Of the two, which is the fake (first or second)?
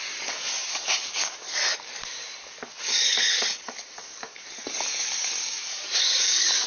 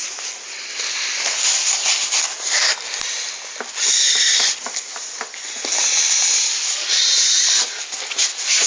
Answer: first